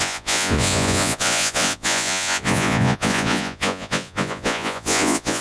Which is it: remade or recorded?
remade